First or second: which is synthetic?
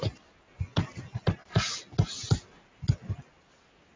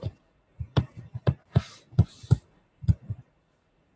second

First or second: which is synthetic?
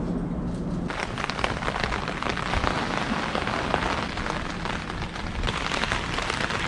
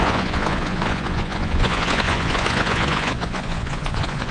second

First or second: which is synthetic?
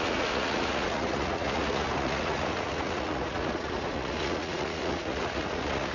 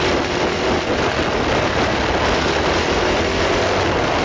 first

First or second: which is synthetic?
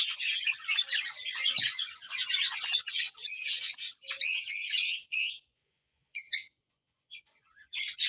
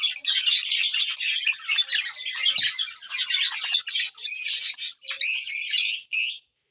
first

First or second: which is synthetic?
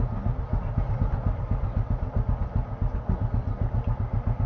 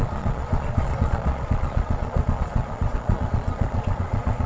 second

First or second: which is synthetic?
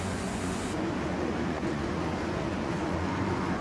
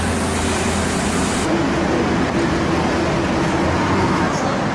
first